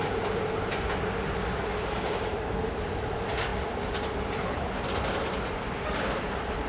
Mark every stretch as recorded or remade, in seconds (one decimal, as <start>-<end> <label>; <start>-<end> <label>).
0.0-3.5 recorded; 3.5-4.7 remade; 4.7-6.7 recorded